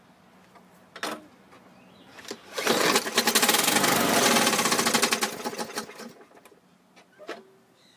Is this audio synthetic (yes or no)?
no